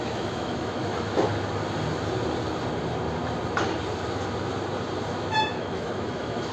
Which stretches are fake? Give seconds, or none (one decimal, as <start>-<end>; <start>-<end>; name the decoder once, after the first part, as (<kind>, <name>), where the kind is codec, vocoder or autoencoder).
0.0-1.3 (autoencoder, DAC-VAE); 5.1-6.5